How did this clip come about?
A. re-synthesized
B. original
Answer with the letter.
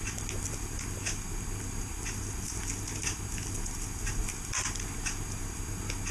B